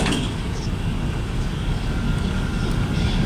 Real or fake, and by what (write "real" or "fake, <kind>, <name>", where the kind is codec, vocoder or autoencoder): fake, codec, DAC